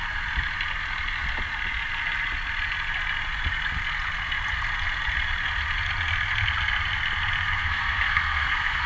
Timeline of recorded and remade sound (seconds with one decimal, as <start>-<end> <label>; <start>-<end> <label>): 0.0-7.6 recorded; 7.6-8.9 remade